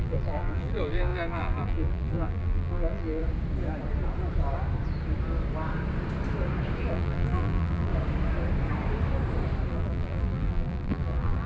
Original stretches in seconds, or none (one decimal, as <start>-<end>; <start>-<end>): 3.2-6.9; 7.9-9.7